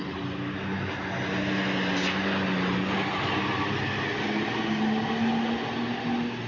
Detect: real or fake real